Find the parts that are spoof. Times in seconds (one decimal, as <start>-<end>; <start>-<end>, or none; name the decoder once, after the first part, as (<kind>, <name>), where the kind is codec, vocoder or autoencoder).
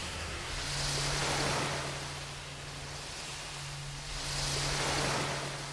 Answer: 0.0-0.5 (codec, SNAC)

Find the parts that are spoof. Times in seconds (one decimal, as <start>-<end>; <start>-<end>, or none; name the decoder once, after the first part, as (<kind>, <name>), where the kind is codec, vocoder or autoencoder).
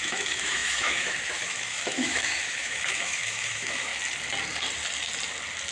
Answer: 0.0-3.9 (autoencoder, DAC-VAE)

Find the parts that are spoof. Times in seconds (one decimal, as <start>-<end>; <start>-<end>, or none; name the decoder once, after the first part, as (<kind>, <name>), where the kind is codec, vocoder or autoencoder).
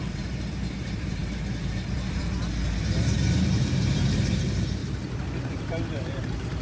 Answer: 0.0-4.8 (vocoder, BigVGAN v2); 5.5-6.6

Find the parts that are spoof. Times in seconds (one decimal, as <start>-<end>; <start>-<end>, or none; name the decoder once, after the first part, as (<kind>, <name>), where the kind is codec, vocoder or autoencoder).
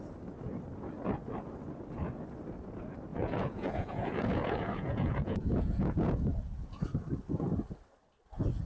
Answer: 3.1-6.8 (vocoder, Vocos)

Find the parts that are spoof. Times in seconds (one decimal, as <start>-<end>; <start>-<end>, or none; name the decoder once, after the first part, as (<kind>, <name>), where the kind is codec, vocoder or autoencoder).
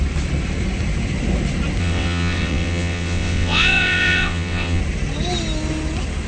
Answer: 1.8-4.8 (vocoder, WaveNeXt)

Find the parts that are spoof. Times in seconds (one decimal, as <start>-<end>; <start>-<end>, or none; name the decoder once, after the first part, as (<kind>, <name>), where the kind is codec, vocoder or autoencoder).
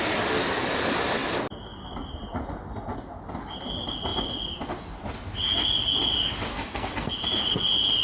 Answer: 6.5-7.1 (codec, SNAC)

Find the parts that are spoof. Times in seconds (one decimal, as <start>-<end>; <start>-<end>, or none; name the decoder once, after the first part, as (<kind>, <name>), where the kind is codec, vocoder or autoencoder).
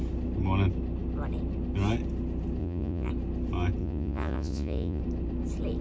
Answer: 2.6-3.1 (vocoder, Vocos); 3.8-5.0